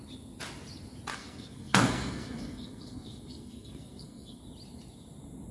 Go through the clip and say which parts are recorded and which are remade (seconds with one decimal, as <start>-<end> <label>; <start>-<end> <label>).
0.0-1.1 recorded; 1.1-4.4 remade; 4.4-5.5 recorded